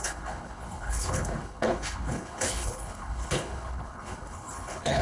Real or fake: fake